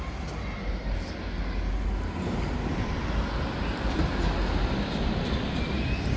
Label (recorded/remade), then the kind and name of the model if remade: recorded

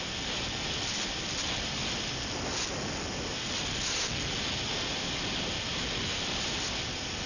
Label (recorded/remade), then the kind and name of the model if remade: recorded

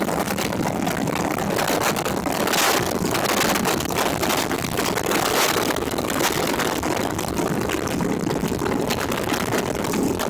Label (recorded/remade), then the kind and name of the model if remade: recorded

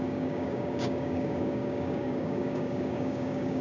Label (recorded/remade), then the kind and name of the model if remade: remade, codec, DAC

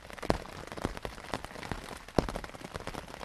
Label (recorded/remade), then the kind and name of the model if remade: recorded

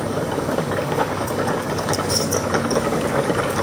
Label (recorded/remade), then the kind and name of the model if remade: remade, codec, DAC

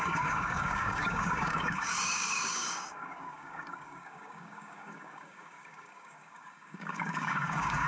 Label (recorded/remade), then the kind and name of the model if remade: remade, codec, DAC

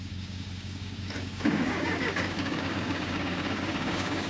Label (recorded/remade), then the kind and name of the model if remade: remade, codec, DAC